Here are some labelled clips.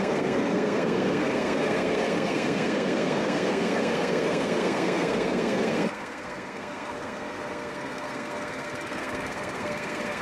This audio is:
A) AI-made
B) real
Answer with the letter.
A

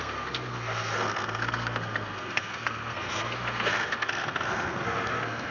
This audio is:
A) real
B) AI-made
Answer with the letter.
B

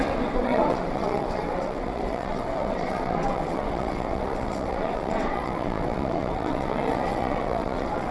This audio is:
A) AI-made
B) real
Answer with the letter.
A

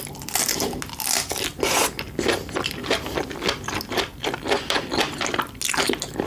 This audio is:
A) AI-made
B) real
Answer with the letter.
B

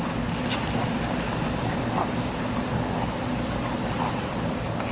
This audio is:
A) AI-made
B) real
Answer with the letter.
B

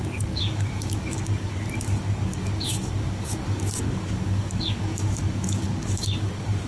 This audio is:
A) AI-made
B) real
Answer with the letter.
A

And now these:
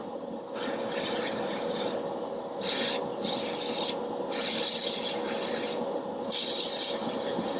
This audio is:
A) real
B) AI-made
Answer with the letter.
A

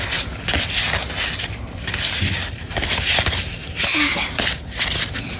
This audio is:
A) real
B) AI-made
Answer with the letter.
A